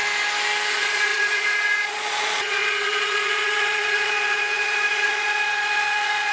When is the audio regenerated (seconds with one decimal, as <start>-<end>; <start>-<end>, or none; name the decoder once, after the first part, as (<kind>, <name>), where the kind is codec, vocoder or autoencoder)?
0.7-6.3 (vocoder, Vocos)